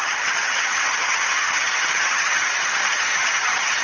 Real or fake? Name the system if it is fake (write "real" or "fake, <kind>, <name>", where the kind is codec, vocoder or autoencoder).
fake, vocoder, HiFi-GAN